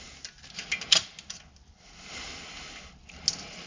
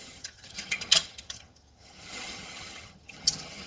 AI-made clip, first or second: second